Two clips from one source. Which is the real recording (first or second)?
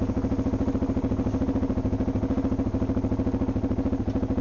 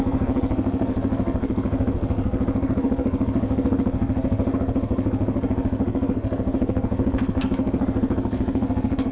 first